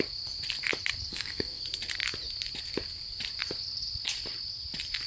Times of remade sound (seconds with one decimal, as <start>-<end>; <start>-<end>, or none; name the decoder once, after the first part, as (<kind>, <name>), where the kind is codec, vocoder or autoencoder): 1.1-1.6 (codec, SNAC)